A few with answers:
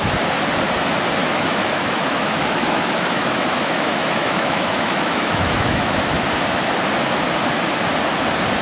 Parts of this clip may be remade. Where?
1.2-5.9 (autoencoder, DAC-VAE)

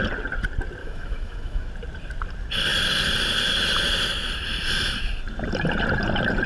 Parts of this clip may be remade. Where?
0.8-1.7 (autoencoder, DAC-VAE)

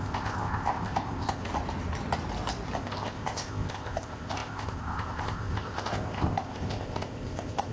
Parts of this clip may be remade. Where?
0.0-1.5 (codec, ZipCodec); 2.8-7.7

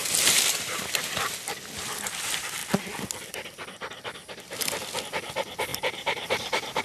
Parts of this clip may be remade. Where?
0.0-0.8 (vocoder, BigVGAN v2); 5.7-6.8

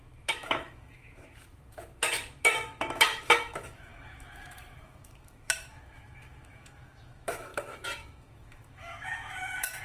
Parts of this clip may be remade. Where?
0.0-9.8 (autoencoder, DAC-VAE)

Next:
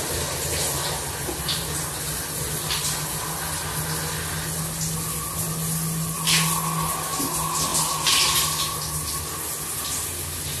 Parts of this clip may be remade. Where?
none

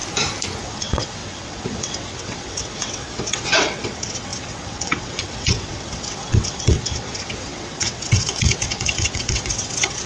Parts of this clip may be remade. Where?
0.6-10.1 (vocoder, WaveNeXt)